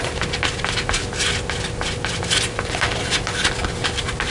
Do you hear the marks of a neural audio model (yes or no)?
no